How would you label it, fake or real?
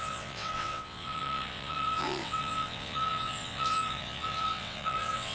fake